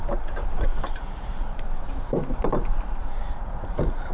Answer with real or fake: fake